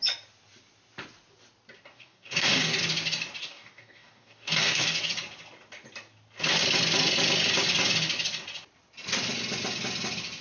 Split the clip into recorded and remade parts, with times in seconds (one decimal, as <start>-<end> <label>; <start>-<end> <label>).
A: 0.0-1.9 recorded; 1.9-2.8 remade; 2.8-3.4 recorded; 3.4-5.1 remade; 5.1-10.4 recorded